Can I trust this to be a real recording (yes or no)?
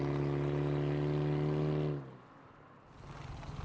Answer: yes